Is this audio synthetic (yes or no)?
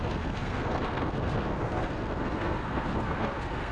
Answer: yes